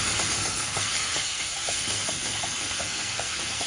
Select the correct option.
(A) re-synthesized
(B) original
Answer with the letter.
A